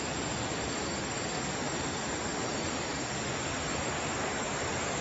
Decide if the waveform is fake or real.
fake